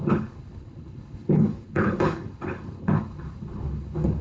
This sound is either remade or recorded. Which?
remade